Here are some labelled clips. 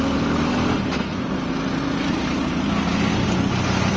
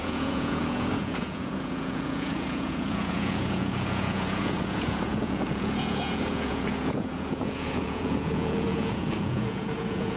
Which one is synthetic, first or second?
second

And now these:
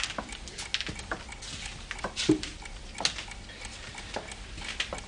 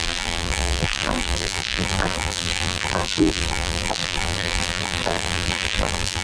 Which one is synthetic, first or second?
second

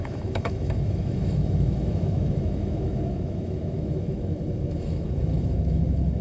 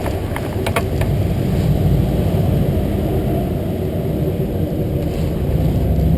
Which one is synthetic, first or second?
first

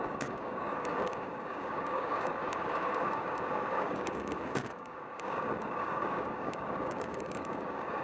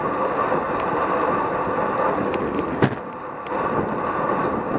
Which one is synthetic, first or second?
first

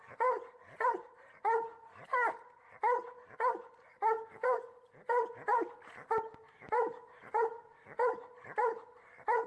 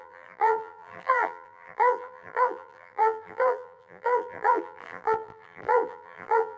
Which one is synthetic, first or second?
second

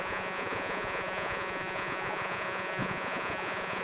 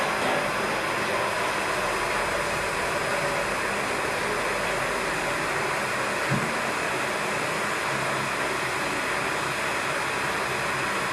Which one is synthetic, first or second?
first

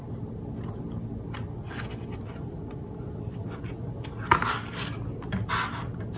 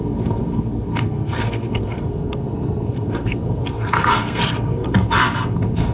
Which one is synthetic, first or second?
second